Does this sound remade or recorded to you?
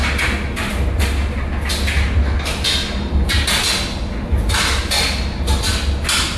recorded